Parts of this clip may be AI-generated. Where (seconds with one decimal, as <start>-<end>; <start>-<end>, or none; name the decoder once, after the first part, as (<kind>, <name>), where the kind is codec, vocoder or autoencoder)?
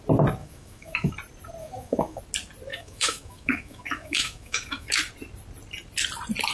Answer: 0.4-1.1 (autoencoder, DAC-VAE); 1.6-2.2; 2.7-4.9